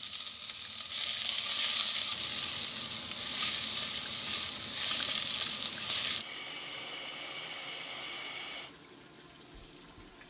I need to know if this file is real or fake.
real